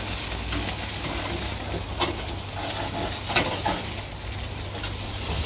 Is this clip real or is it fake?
real